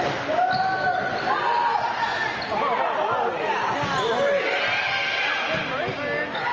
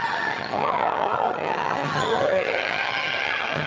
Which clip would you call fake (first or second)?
second